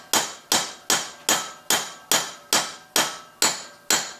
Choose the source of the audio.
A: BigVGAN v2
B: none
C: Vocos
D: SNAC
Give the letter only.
B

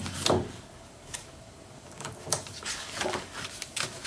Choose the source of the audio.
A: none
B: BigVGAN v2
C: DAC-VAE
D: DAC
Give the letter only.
D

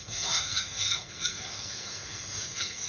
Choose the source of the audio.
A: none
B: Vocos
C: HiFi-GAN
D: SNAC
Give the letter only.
D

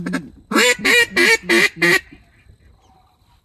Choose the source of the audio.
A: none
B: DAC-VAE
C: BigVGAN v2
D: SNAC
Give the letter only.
A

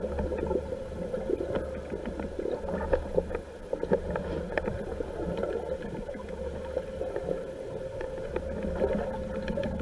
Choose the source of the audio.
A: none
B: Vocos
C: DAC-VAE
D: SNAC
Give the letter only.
A